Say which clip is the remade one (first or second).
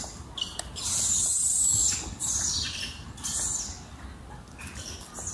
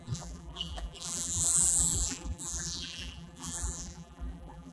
second